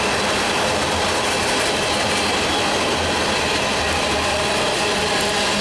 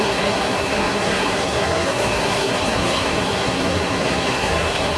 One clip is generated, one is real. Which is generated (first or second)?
second